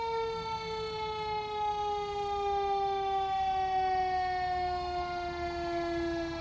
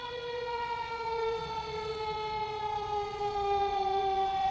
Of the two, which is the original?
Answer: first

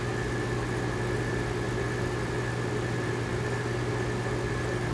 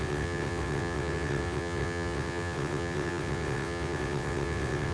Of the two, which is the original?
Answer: first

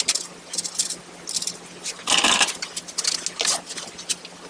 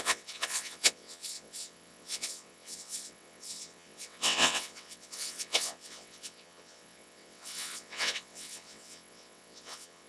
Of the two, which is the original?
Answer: first